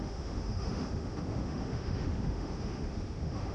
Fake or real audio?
fake